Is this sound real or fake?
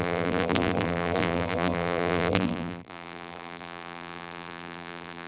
fake